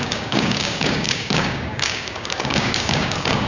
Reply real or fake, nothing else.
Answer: fake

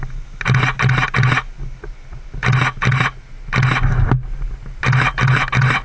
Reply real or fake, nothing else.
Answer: real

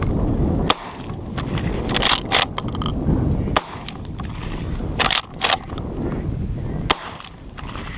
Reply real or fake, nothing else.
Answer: real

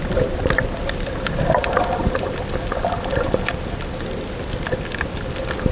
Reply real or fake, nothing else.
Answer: real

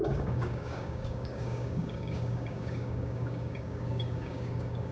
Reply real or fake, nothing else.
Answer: fake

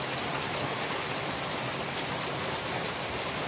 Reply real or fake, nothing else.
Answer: real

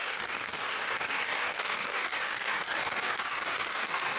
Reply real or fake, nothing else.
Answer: fake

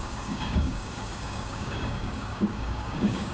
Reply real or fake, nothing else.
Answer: fake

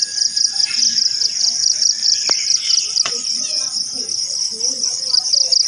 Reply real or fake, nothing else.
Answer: real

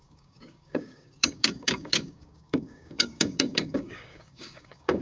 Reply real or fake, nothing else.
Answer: fake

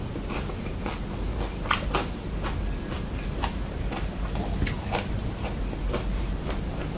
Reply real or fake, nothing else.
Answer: real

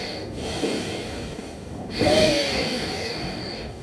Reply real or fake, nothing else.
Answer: fake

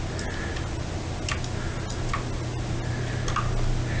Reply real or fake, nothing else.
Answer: real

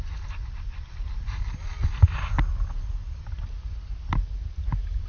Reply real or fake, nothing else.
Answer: real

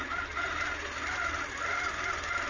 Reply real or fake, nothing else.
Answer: real